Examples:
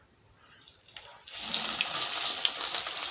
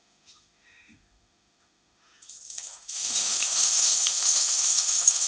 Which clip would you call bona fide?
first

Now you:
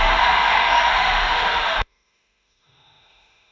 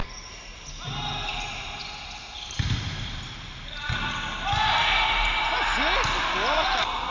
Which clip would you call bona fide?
second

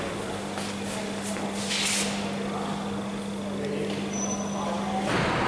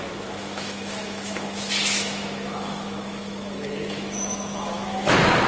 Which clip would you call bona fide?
first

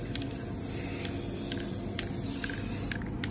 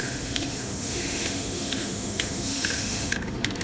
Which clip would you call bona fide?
first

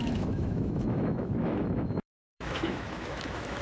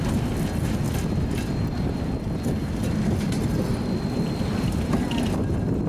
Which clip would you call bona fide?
second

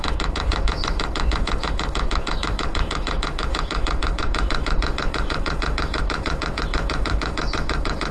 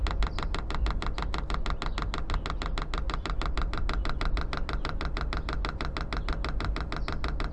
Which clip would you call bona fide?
second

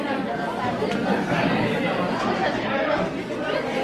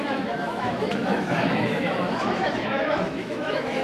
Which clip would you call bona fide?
first